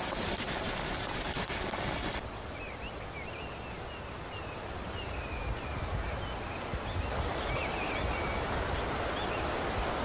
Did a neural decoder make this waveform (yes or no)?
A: no